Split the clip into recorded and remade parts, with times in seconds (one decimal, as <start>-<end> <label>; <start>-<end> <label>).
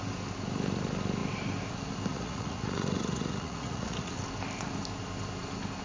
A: 0.0-2.1 recorded; 2.1-4.2 remade; 4.2-5.8 recorded